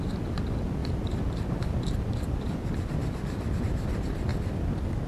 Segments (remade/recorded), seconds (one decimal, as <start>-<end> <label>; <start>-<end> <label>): 0.0-0.8 recorded; 0.8-3.6 remade; 3.6-4.3 recorded; 4.3-5.1 remade